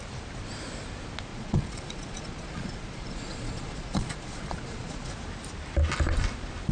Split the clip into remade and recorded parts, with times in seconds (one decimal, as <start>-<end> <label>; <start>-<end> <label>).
0.0-1.3 recorded; 1.3-5.1 remade; 5.1-6.7 recorded